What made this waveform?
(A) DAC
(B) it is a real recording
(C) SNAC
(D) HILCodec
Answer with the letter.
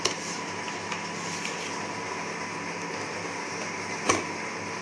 B